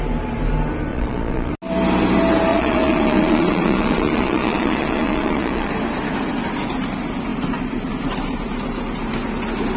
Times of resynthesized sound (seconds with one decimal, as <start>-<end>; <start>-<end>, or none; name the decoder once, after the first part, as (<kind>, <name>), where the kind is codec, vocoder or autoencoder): 0.9-1.5 (vocoder, Vocos); 2.5-5.7